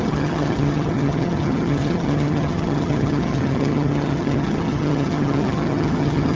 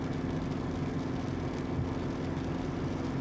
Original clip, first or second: second